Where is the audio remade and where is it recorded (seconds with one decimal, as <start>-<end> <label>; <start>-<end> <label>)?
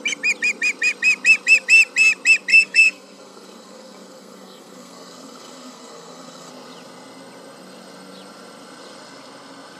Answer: 0.0-2.5 recorded; 2.5-6.5 remade; 6.5-9.8 recorded